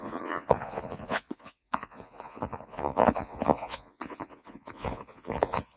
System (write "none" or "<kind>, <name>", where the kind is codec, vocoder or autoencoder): vocoder, Vocos